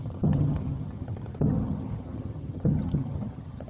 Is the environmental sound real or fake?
fake